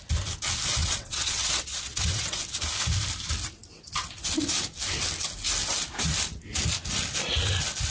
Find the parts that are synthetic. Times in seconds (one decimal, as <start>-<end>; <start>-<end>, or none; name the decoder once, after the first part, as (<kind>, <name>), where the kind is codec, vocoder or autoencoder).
0.8-2.4 (vocoder, WaveNeXt)